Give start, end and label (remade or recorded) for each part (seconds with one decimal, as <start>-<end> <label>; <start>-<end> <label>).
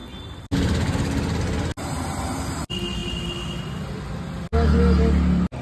0.0-5.6 recorded